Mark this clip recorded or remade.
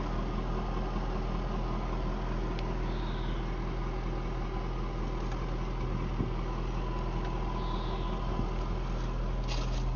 recorded